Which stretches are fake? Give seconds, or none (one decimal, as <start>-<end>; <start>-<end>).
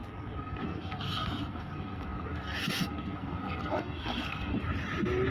0.0-4.5